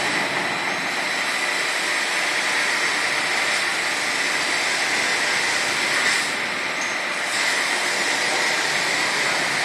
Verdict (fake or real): real